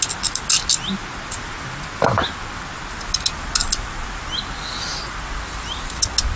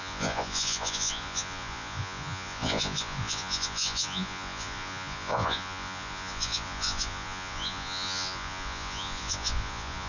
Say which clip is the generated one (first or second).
second